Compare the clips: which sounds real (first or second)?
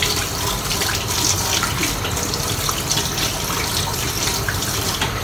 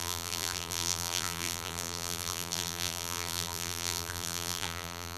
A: first